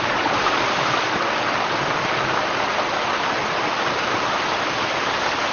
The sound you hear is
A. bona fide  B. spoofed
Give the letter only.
A